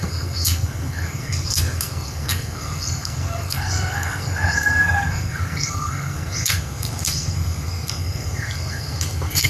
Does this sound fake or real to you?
fake